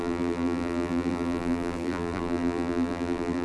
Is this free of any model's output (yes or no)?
no